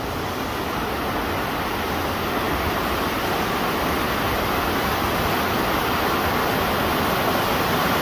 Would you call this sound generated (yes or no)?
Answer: no